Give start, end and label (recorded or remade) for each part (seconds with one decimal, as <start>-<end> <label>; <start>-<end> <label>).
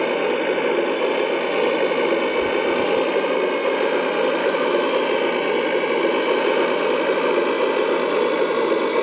0.0-4.4 recorded; 4.4-4.9 remade; 4.9-9.0 recorded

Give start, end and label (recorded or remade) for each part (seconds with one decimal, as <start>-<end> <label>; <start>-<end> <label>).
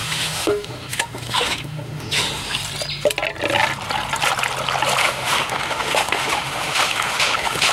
0.0-2.6 remade; 2.6-5.0 recorded; 5.0-7.7 remade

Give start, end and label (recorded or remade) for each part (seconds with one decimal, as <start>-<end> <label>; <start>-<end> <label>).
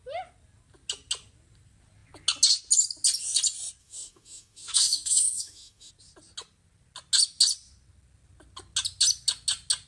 0.0-3.8 recorded; 3.8-5.9 remade; 5.9-9.9 recorded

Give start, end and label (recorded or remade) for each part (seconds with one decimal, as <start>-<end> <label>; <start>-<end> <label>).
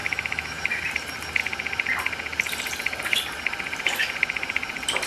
0.0-0.8 remade; 0.8-5.1 recorded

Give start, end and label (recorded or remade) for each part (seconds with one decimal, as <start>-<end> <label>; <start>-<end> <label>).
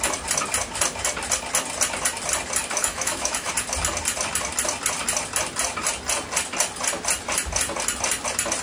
0.0-2.8 recorded; 2.8-3.5 remade; 3.5-8.6 recorded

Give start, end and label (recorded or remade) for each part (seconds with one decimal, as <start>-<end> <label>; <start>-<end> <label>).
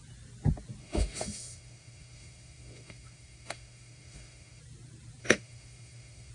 0.0-0.8 recorded; 0.8-4.6 remade; 4.6-5.2 recorded; 5.2-6.3 remade